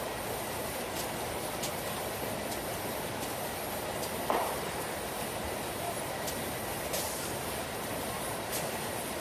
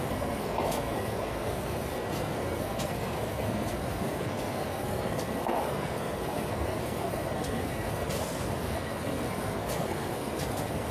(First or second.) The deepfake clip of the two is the second